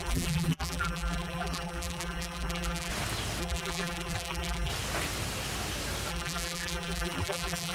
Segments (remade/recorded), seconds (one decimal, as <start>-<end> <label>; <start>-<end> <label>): 0.0-2.9 remade; 2.9-3.4 recorded; 3.4-4.7 remade; 4.7-6.1 recorded; 6.1-7.7 remade